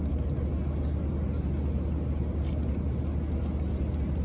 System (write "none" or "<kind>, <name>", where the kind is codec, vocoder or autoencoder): none